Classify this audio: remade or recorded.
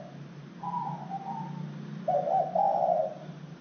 recorded